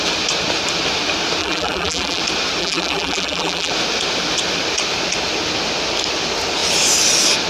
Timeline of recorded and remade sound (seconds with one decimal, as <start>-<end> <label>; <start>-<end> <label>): 0.0-1.4 recorded; 1.4-2.2 remade; 2.2-2.6 recorded; 2.6-3.7 remade; 3.7-7.5 recorded